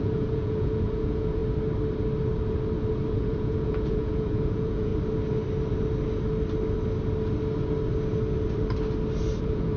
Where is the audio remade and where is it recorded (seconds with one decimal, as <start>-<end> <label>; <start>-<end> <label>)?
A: 0.0-1.4 remade; 1.4-3.1 recorded; 3.1-4.9 remade; 4.9-9.4 recorded; 9.4-9.8 remade